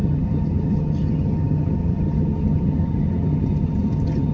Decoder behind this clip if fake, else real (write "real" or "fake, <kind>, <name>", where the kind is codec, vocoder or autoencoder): fake, vocoder, HiFi-GAN